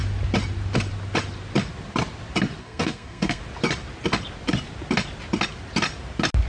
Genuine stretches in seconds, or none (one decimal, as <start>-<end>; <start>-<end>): 0.0-2.6; 3.4-6.5